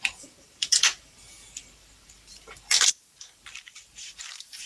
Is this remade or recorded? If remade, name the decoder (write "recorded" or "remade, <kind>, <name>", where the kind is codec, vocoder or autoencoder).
remade, vocoder, BigVGAN v2